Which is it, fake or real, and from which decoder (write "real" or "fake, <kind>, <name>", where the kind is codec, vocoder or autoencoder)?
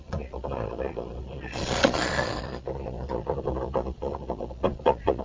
fake, vocoder, Vocos